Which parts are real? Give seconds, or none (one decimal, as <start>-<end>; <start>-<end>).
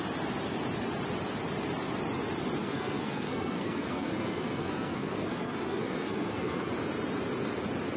0.0-2.6; 6.7-8.0